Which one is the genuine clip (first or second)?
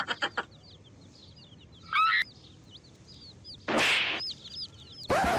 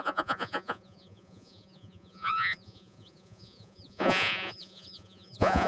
first